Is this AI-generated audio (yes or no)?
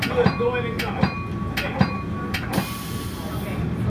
no